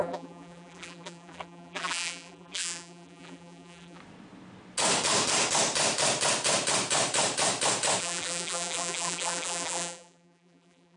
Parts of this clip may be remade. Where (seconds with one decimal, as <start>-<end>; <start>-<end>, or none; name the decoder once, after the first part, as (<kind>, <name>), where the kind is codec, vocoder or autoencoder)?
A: 0.0-4.0 (vocoder, BigVGAN v2); 8.0-11.0